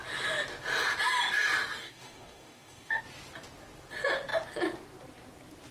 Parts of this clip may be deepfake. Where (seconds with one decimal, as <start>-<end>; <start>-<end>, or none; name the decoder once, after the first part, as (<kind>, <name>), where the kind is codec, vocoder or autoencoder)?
1.8-3.0 (codec, DAC)